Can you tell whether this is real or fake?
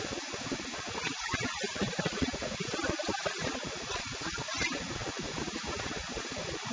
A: fake